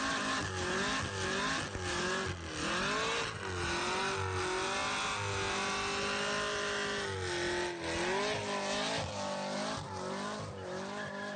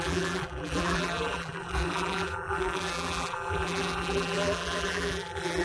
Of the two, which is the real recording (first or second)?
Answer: first